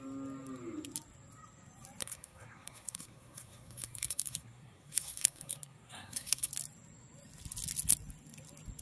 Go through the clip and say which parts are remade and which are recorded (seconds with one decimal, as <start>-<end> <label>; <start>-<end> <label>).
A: 0.0-2.0 recorded; 2.0-6.5 remade; 6.5-8.8 recorded